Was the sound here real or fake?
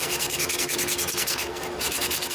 fake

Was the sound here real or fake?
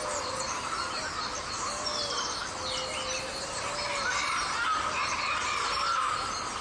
real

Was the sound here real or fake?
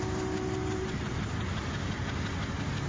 real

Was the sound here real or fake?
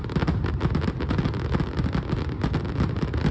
real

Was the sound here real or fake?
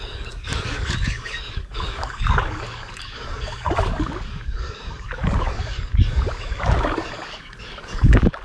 fake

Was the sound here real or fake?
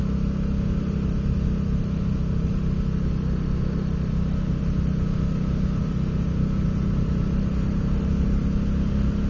real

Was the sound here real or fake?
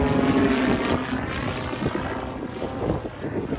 real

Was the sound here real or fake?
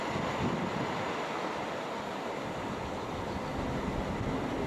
real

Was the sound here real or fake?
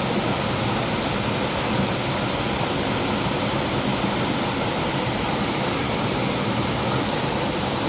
real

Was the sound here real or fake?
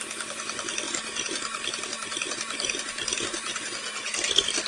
real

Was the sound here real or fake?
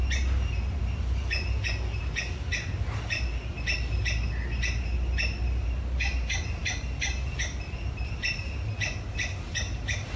real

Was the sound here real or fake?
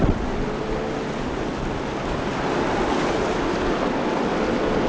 real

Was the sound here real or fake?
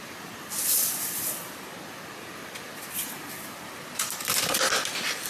fake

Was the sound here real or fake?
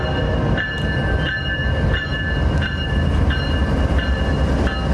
real